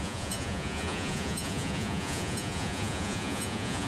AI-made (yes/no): yes